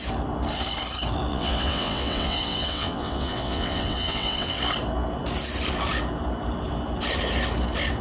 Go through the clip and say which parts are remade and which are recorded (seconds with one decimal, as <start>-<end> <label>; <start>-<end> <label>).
0.0-1.3 recorded; 1.3-4.6 remade; 4.6-8.0 recorded